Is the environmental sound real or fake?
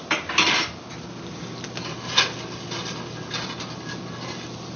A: real